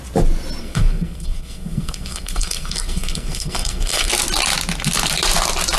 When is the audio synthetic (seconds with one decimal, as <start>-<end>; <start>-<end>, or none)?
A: 0.6-4.1